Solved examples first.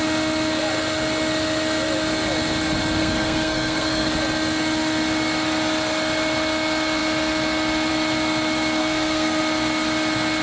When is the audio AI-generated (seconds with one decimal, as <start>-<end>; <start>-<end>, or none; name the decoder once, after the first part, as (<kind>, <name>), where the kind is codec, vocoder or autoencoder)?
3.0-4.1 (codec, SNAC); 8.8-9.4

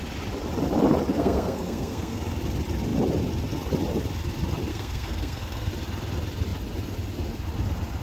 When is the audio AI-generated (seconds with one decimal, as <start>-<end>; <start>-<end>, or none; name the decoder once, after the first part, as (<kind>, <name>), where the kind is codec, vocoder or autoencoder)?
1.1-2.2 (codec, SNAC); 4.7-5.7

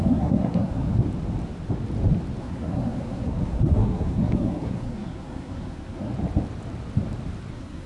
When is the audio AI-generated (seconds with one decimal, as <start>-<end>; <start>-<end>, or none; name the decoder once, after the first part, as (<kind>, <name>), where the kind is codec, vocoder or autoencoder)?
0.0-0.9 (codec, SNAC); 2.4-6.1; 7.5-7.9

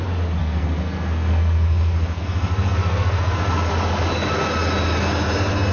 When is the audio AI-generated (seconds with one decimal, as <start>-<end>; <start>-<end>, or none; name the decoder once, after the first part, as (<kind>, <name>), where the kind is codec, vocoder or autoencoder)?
0.4-3.7 (codec, SNAC)

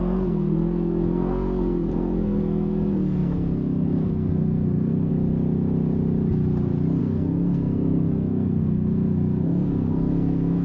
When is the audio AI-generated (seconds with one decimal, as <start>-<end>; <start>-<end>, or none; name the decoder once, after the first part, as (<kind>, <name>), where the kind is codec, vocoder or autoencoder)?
0.0-5.1 (codec, SNAC); 7.0-10.6

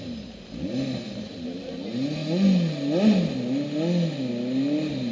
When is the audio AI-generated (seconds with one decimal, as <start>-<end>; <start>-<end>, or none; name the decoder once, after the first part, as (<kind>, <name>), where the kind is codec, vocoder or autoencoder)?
none